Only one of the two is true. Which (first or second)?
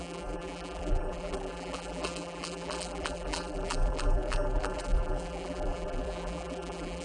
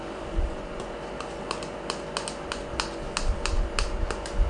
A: second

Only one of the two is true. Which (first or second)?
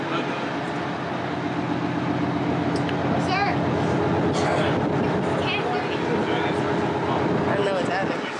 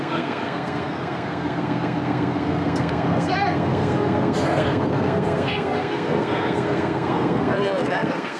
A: first